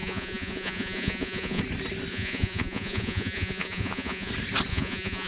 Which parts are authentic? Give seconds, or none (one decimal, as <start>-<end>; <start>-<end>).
1.6-2.1; 4.3-4.7